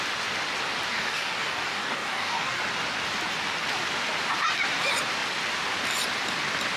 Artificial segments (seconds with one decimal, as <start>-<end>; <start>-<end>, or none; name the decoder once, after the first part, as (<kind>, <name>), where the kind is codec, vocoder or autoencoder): 0.9-2.6 (codec, DAC)

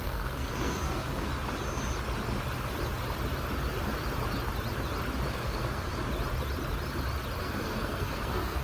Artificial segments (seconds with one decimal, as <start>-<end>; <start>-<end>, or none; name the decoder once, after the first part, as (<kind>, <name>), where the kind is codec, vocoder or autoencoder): 0.0-1.3 (codec, SNAC); 5.3-5.9; 7.4-8.6

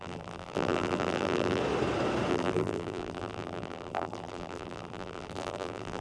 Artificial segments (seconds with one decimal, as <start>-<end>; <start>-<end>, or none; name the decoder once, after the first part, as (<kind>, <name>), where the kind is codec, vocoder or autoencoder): 0.0-1.6 (vocoder, BigVGAN v2); 2.3-6.0